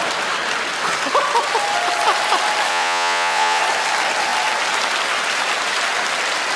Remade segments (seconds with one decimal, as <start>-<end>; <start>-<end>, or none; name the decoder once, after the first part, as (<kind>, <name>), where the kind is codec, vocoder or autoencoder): 2.7-3.6 (vocoder, Vocos)